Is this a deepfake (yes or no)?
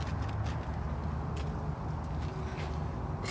no